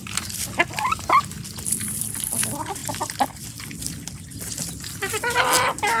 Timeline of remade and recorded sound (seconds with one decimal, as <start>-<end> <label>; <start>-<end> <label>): 0.0-6.0 recorded